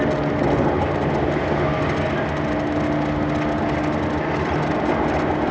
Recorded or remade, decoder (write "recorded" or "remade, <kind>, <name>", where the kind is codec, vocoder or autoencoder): recorded